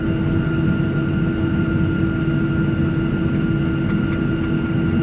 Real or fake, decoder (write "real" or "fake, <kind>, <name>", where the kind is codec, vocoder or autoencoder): real